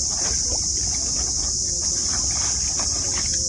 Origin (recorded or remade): recorded